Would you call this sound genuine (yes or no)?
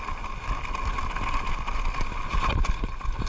yes